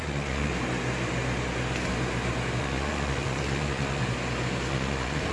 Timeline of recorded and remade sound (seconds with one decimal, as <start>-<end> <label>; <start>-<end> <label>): 0.0-0.5 remade; 0.5-2.6 recorded; 2.6-4.0 remade; 4.0-4.7 recorded; 4.7-5.3 remade